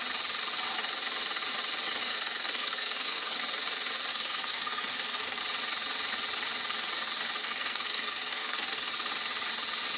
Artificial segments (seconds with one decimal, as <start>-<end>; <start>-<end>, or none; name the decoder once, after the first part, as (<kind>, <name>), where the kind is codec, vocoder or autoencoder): 2.0-3.4 (codec, SNAC); 4.1-5.4; 7.4-8.9